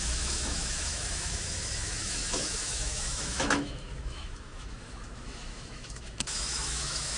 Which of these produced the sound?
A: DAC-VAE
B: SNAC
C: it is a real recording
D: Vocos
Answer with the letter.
A